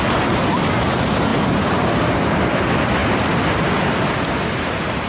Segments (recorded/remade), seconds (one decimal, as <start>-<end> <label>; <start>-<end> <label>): 0.0-1.3 recorded; 1.3-1.8 remade; 1.8-5.1 recorded